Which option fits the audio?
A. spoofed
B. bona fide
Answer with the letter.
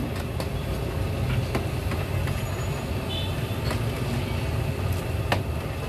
B